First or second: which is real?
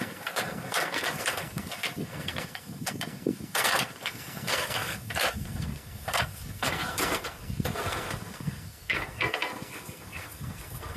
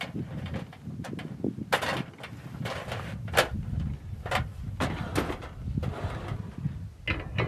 second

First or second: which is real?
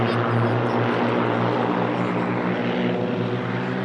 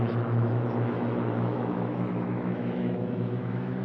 first